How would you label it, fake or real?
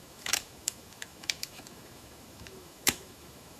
fake